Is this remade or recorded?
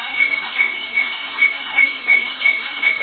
remade